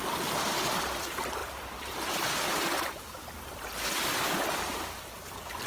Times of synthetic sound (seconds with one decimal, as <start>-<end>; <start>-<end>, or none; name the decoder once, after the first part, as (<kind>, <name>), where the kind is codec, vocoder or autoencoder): none